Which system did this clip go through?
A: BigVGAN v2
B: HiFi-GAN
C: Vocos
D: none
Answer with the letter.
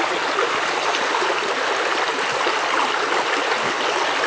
D